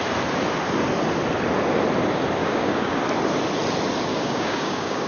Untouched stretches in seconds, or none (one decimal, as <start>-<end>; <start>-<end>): 0.0-2.4; 3.0-4.1